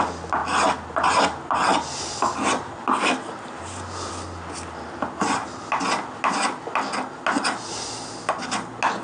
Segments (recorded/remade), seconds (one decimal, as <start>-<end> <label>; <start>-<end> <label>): 0.0-9.0 recorded